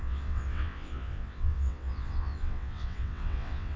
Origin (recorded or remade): remade